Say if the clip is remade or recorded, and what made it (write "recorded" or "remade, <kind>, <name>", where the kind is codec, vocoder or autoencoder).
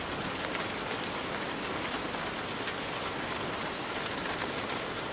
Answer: recorded